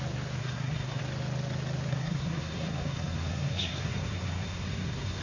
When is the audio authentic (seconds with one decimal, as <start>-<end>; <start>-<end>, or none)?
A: 0.0-0.4; 1.0-1.9